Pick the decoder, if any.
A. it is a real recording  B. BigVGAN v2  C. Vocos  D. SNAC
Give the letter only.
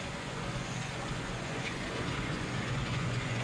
C